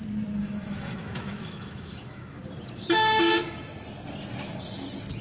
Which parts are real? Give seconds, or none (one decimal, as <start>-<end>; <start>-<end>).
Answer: 0.0-0.4; 2.4-5.2